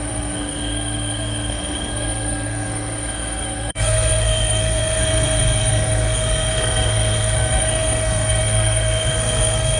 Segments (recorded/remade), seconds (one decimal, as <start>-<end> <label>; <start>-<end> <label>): 0.0-9.8 remade